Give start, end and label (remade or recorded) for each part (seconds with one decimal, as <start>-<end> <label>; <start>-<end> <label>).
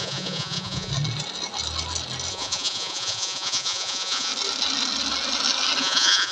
0.0-0.9 remade; 0.9-2.3 recorded; 2.3-4.3 remade; 4.3-5.8 recorded; 5.8-6.3 remade